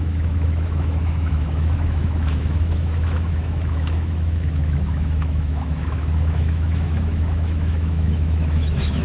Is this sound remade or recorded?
remade